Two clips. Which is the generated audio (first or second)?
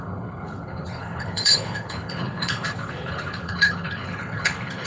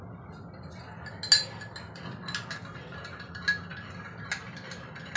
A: first